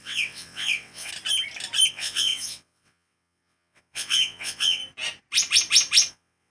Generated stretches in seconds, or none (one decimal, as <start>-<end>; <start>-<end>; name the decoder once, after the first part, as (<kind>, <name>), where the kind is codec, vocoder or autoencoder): 0.0-1.1 (vocoder, WaveNeXt); 1.9-4.8; 6.1-6.5